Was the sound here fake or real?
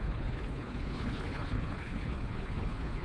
fake